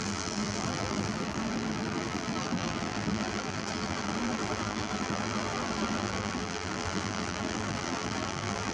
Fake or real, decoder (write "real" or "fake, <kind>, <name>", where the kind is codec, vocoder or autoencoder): fake, vocoder, BigVGAN v2